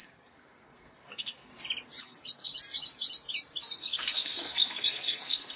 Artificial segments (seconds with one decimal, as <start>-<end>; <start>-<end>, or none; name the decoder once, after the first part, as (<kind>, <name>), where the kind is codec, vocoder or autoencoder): 0.0-1.5 (codec, SNAC); 2.0-2.5; 3.7-5.6